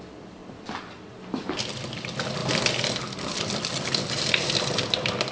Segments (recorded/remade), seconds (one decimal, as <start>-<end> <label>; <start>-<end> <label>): 0.0-0.4 remade; 0.4-1.1 recorded; 1.1-5.3 remade